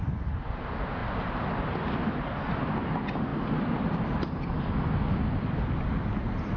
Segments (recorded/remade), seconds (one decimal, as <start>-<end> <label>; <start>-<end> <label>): 0.0-6.6 recorded